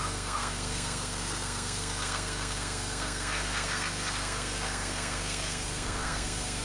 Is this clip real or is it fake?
fake